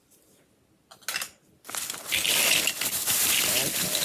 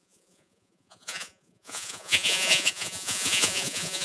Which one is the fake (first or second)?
second